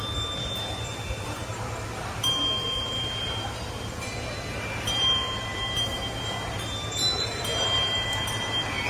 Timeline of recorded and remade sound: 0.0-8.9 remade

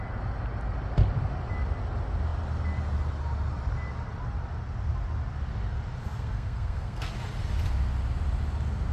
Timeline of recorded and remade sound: 0.0-6.0 recorded; 6.0-7.1 remade; 7.1-8.9 recorded

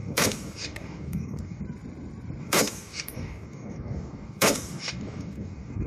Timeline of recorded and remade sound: 0.0-1.6 remade; 1.6-2.4 recorded; 2.4-5.9 remade

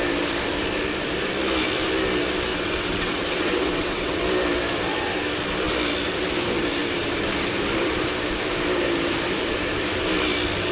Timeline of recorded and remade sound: 0.0-2.5 recorded; 2.5-4.2 remade; 4.2-10.7 recorded